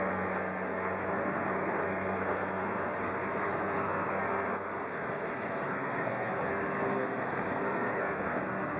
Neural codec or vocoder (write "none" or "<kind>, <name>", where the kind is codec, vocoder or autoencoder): codec, SNAC